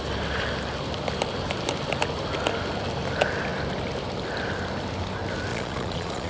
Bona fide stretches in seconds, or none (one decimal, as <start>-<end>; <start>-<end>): 0.0-5.5